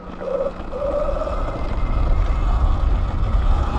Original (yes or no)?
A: yes